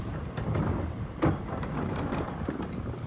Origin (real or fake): fake